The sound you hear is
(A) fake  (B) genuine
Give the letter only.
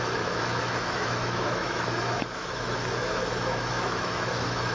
A